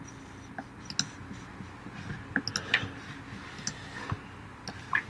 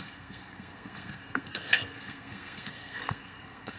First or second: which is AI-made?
second